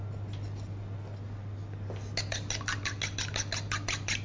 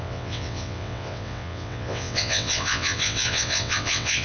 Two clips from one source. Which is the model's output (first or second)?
second